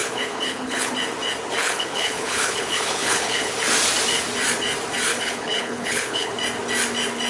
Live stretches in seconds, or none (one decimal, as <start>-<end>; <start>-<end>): 0.9-1.6; 3.5-5.1; 6.3-7.3